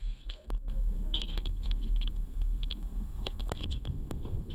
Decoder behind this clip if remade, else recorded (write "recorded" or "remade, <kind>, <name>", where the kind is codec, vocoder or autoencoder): remade, codec, SNAC